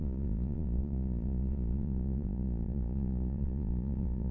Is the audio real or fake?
fake